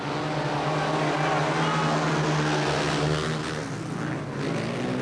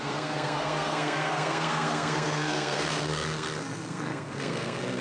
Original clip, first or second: first